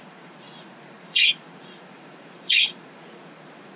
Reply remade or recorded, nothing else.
remade